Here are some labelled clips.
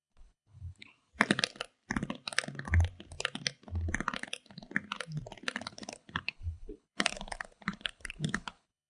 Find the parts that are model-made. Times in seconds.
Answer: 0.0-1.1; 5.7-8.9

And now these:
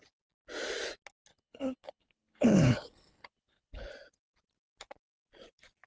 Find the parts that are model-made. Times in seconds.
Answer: 1.3-3.9

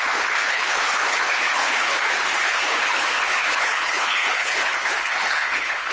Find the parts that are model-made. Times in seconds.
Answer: 0.0-5.9

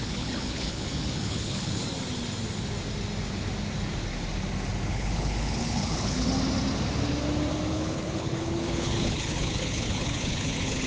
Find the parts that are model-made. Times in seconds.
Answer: 0.0-1.8; 4.9-6.3; 7.7-10.9

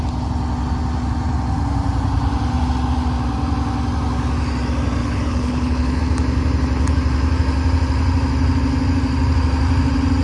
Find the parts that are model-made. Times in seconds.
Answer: 5.0-6.0